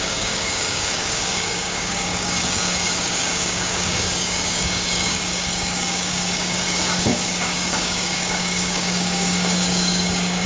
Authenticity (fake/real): fake